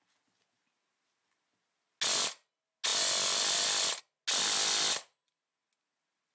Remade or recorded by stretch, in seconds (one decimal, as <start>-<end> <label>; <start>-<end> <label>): 0.0-6.3 recorded